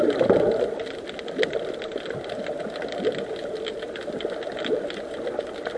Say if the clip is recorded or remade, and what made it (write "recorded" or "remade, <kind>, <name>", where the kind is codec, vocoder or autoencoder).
recorded